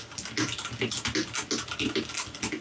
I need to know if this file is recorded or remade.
recorded